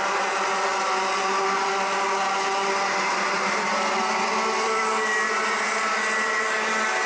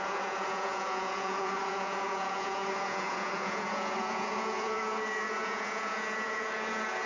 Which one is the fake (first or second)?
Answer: second